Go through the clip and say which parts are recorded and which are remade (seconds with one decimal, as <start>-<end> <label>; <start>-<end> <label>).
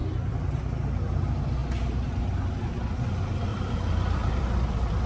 0.0-3.5 recorded; 3.5-5.1 remade